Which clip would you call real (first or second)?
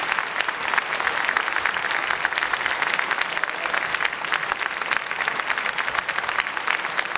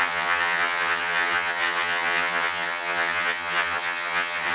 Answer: first